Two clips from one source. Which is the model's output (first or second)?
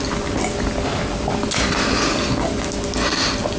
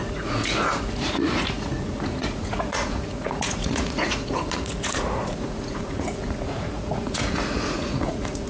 second